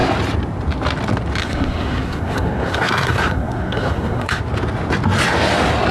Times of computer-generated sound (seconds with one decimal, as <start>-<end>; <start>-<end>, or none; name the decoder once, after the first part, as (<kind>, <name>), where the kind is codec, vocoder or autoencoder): 1.4-4.4 (codec, SNAC)